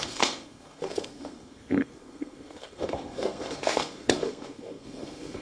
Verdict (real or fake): fake